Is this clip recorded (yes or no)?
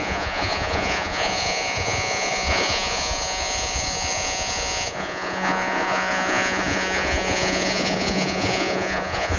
no